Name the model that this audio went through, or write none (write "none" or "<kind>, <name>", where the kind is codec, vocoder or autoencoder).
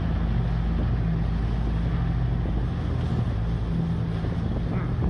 none